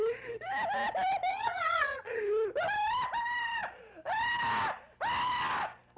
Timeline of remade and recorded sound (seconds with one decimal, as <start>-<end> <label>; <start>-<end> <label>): 0.0-1.3 recorded; 1.3-2.2 remade; 2.2-6.0 recorded